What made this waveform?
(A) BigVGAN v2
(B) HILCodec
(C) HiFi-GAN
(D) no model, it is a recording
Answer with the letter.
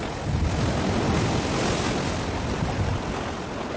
D